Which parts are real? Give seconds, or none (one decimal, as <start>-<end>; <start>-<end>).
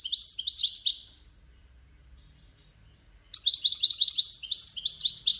0.0-5.4